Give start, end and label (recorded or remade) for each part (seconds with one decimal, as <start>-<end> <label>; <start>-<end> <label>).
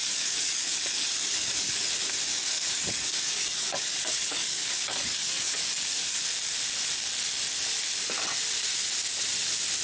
0.0-1.9 remade; 1.9-2.3 recorded; 2.3-6.2 remade; 6.2-9.8 recorded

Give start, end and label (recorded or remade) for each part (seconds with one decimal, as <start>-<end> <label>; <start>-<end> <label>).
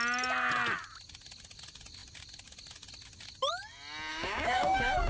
0.0-4.1 recorded; 4.1-5.1 remade